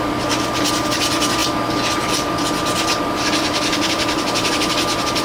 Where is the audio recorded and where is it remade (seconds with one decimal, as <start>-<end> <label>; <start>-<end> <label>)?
0.0-5.2 recorded